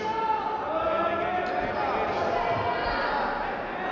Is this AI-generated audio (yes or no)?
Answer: no